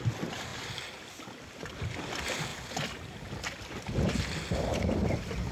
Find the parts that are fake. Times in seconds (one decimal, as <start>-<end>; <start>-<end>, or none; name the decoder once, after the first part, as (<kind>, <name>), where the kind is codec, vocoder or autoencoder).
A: none